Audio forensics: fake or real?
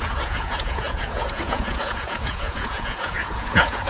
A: fake